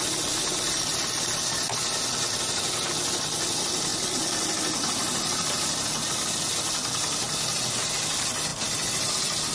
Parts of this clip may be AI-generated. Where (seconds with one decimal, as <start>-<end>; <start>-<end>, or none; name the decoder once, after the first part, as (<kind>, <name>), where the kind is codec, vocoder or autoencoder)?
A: 8.5-9.1 (vocoder, BigVGAN v2)